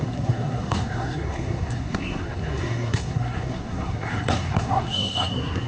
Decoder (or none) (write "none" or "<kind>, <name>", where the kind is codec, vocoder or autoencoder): codec, SNAC